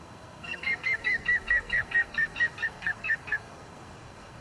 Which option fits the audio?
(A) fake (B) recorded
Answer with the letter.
A